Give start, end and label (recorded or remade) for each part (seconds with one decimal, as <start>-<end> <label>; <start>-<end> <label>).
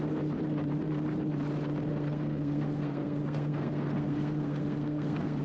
0.0-1.9 recorded; 1.9-5.4 remade